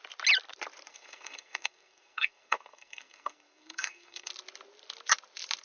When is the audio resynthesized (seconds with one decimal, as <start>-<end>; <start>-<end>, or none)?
0.9-4.3